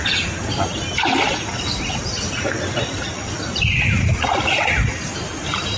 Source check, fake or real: real